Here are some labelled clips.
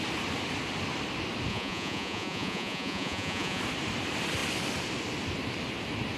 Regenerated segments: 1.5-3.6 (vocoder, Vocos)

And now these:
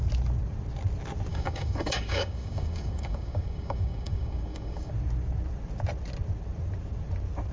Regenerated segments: 1.3-4.9 (codec, DAC)

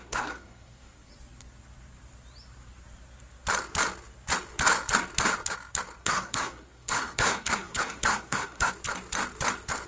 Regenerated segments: 0.0-1.1 (codec, SNAC); 6.0-8.7

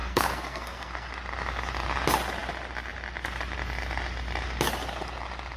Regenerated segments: 0.0-1.1 (codec, SNAC)

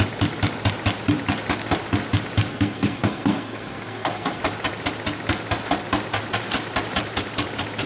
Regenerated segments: 2.5-4.4 (codec, SNAC)

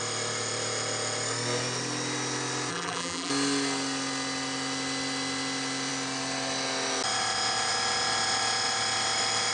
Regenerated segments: 2.7-3.3 (vocoder, BigVGAN v2)